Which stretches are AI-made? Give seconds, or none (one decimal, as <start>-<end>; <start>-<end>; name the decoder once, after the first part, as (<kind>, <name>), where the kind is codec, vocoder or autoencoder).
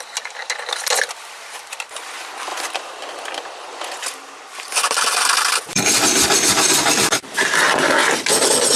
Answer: 2.5-5.2 (vocoder, BigVGAN v2); 5.7-7.6